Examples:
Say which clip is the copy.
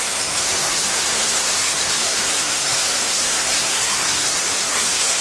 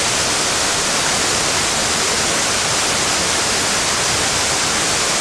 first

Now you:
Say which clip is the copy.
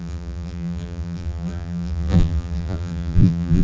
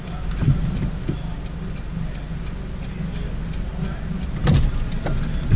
first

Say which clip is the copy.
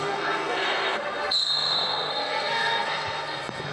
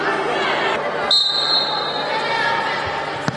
first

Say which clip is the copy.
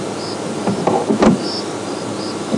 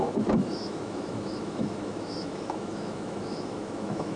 second